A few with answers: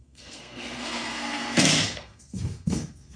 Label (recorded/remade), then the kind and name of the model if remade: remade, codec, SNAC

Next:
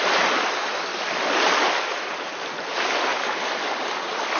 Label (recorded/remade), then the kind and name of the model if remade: recorded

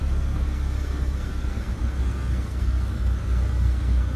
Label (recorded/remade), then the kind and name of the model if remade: remade, codec, SNAC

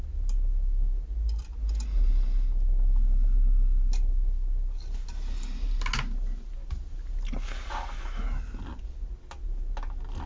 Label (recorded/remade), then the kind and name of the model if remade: recorded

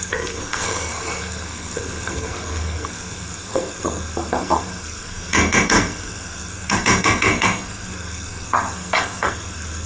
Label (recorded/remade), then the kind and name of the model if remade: remade, codec, SNAC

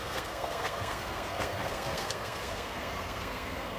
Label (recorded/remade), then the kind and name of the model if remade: remade, codec, SNAC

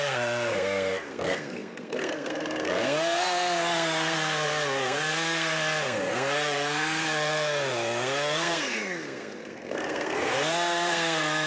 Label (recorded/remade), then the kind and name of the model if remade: remade, codec, SNAC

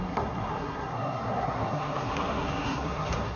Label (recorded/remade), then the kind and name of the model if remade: remade, codec, SNAC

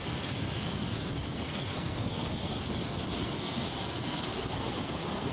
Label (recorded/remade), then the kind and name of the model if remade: remade, codec, SNAC